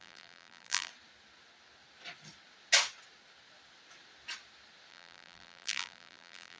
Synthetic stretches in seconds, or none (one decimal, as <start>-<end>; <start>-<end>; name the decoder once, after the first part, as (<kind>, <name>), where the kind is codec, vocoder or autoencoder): 0.0-0.9 (vocoder, BigVGAN v2); 4.9-6.6

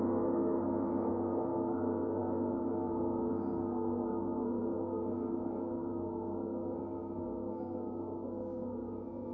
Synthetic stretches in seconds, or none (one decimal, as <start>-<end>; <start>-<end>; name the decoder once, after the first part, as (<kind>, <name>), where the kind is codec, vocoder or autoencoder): 0.0-9.3 (codec, SNAC)

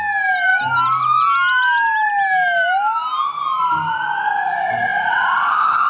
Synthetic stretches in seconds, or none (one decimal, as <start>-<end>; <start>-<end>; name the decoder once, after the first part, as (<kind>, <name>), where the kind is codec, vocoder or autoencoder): none